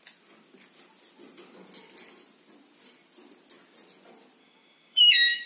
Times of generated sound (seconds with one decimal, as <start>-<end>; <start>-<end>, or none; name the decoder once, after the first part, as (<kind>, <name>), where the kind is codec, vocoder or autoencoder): 4.4-5.5 (autoencoder, DAC-VAE)